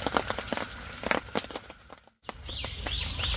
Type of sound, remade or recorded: recorded